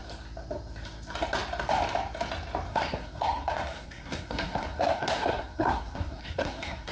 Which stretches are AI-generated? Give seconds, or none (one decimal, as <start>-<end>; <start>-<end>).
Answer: 2.7-6.9